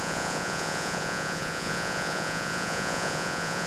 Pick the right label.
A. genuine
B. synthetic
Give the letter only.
B